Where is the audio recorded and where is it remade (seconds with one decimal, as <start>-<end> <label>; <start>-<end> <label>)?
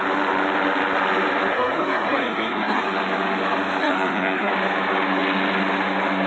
0.0-1.5 recorded; 1.5-2.8 remade; 2.8-3.8 recorded; 3.8-4.5 remade; 4.5-6.3 recorded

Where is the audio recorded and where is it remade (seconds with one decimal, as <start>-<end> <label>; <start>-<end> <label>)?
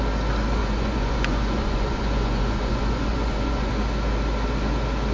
0.0-0.6 recorded; 0.6-3.7 remade; 3.7-5.1 recorded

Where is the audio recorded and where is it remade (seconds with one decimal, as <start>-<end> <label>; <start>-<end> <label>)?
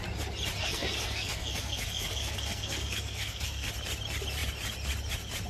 0.0-0.6 recorded; 0.6-3.7 remade; 3.7-5.5 recorded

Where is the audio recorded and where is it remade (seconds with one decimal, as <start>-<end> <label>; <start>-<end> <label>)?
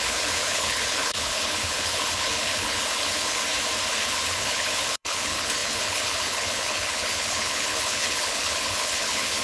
0.0-3.4 remade; 3.4-3.9 recorded; 3.9-9.4 remade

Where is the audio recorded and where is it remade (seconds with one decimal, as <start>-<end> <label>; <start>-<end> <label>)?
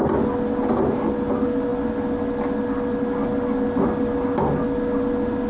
0.0-5.5 recorded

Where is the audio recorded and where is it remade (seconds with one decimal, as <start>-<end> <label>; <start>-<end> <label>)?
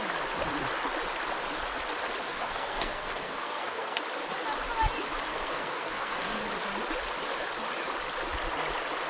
0.0-2.3 recorded; 2.3-4.0 remade; 4.0-5.3 recorded; 5.3-6.5 remade; 6.5-9.1 recorded